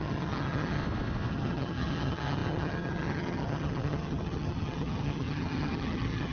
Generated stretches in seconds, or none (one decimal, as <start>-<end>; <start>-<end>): 0.0-0.8; 1.3-6.3